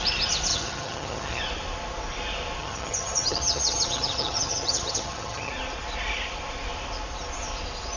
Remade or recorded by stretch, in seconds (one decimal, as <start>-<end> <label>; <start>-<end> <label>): 0.0-0.5 recorded; 0.5-1.4 remade; 1.4-2.6 recorded; 2.6-5.5 remade; 5.5-8.0 recorded